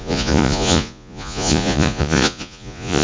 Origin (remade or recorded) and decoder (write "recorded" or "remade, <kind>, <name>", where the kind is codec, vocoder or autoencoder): remade, vocoder, Vocos